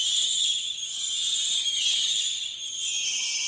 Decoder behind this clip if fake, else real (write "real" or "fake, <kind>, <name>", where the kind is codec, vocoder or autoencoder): fake, vocoder, HiFi-GAN